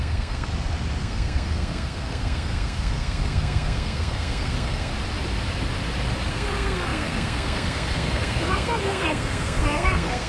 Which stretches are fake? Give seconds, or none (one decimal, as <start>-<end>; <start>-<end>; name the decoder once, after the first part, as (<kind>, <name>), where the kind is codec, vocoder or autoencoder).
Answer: 0.0-0.5 (codec, SNAC); 1.0-4.9; 6.3-10.3

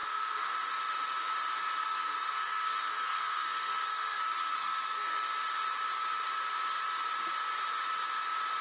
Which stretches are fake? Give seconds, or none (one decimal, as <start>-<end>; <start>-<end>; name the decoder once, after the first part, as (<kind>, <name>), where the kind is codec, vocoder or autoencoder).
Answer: 0.0-0.7 (codec, SNAC); 1.8-5.3

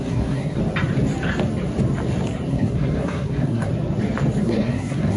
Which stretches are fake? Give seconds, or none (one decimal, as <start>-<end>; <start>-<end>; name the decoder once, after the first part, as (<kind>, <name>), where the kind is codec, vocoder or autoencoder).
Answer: 0.0-0.6 (codec, SNAC); 2.5-3.7; 4.4-5.2

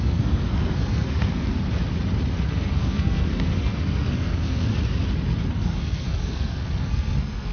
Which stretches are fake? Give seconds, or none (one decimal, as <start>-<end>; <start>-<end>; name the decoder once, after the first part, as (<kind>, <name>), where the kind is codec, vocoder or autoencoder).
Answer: 0.0-1.5 (codec, SNAC); 2.5-4.7; 5.5-7.5

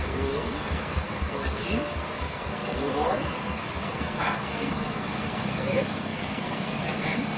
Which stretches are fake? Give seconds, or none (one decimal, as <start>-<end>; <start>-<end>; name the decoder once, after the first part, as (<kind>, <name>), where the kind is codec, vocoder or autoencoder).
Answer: 0.0-7.4 (codec, SNAC)

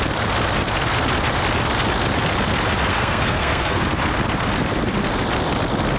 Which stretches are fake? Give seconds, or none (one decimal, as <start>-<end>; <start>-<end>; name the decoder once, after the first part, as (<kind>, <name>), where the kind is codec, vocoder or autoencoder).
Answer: 2.9-3.8 (codec, SNAC)